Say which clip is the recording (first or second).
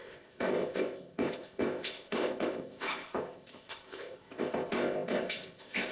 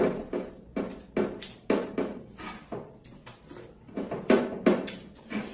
second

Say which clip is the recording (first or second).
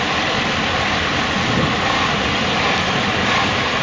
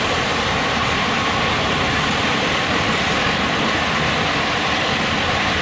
first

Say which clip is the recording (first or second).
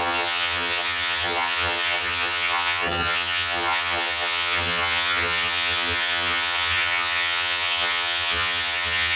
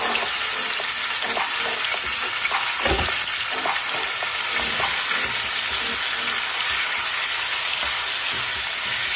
second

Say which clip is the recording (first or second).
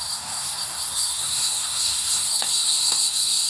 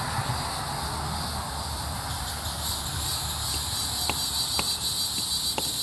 second